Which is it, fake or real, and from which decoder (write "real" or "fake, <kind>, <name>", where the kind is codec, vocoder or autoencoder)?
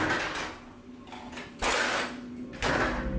real